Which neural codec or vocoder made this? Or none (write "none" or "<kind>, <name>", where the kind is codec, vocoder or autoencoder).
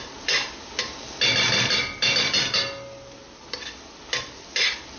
none